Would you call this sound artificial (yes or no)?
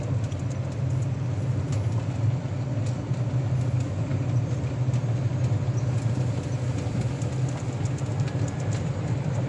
no